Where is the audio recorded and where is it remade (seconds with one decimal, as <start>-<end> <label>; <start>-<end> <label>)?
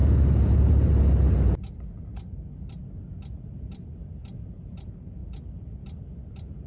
0.0-3.5 recorded; 3.5-4.2 remade; 4.2-4.7 recorded; 4.7-5.2 remade; 5.2-6.3 recorded; 6.3-6.7 remade